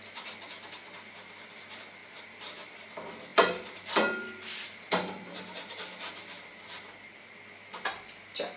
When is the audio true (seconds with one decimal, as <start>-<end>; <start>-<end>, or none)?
0.0-2.0; 2.7-3.3; 5.8-6.2; 6.8-8.6